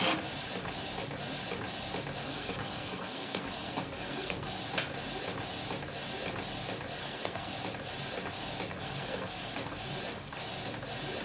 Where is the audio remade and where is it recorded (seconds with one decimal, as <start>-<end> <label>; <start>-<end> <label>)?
0.0-2.2 recorded; 2.2-4.6 remade; 4.6-7.0 recorded; 7.0-7.5 remade; 7.5-8.7 recorded; 8.7-9.9 remade; 9.9-11.2 recorded